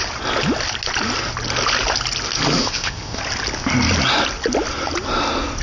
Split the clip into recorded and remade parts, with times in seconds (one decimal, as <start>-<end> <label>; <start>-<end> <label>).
0.0-2.6 recorded; 2.6-3.2 remade; 3.2-5.6 recorded

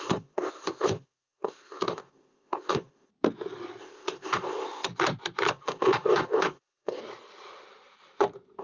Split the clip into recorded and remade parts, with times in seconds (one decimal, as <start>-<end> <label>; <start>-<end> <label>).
0.0-3.1 remade; 3.1-3.8 recorded; 3.8-4.9 remade; 4.9-5.5 recorded; 5.5-7.0 remade; 7.0-8.6 recorded

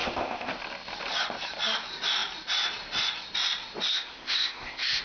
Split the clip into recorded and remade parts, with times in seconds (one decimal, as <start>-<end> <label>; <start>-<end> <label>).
0.0-0.5 remade; 0.5-3.9 recorded; 3.9-5.0 remade

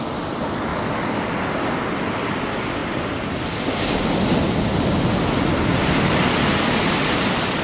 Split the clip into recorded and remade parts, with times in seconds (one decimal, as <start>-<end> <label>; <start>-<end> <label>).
0.0-7.6 recorded